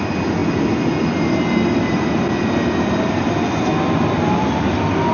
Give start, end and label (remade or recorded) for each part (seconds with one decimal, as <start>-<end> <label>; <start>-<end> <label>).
0.0-5.1 recorded